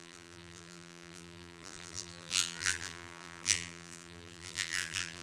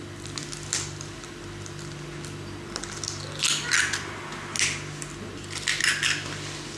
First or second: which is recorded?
second